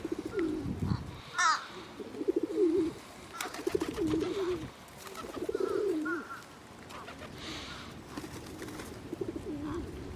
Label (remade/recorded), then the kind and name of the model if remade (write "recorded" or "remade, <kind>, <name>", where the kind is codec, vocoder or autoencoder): recorded